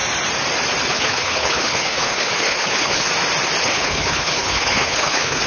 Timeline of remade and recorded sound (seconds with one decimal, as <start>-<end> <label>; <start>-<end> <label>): 0.0-0.9 recorded; 0.9-3.1 remade; 3.1-3.6 recorded; 3.6-5.5 remade